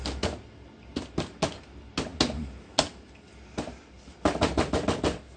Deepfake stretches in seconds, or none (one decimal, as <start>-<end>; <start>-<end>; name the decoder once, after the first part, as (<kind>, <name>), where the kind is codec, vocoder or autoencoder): none